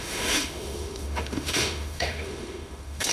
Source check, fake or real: fake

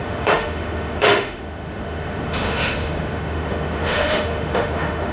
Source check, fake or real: fake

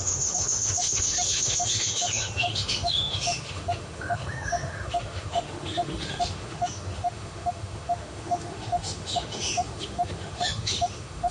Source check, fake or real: fake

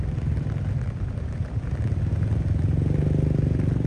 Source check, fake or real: real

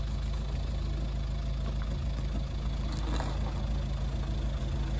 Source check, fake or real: real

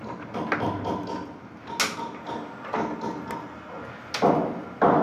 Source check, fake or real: real